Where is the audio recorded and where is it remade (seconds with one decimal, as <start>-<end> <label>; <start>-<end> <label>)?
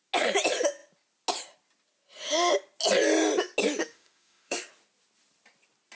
0.0-3.8 recorded; 3.8-4.6 remade; 4.6-6.0 recorded